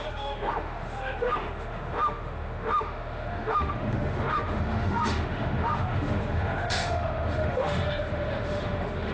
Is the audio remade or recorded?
remade